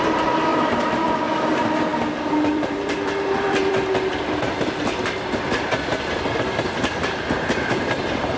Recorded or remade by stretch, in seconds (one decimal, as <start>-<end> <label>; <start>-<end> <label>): 0.0-0.5 recorded; 0.5-1.2 remade; 1.2-1.9 recorded; 1.9-5.6 remade; 5.6-8.4 recorded